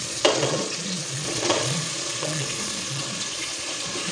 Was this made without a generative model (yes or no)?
no